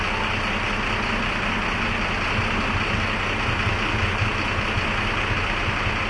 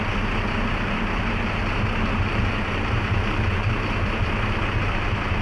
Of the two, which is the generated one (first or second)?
second